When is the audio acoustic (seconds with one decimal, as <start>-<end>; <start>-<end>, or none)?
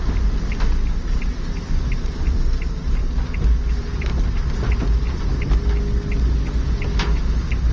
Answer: 0.0-7.7